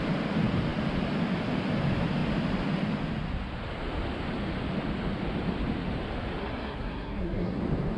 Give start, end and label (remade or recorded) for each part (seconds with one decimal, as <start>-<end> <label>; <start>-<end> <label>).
0.0-6.4 recorded; 6.4-7.6 remade; 7.6-8.0 recorded